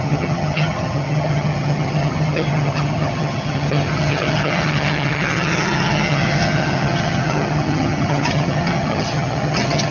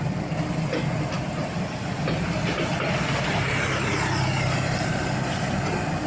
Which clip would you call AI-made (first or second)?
first